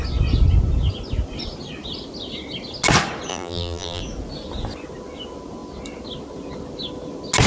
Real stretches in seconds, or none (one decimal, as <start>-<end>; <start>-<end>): 0.0-3.3; 4.0-7.5